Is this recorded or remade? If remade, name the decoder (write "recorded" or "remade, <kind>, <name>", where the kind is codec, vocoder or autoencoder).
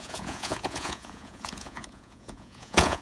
remade, vocoder, Vocos